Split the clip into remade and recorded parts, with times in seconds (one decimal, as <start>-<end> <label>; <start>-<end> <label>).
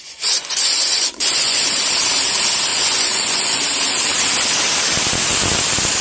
0.0-1.6 remade; 1.6-2.7 recorded; 2.7-3.6 remade; 3.6-6.0 recorded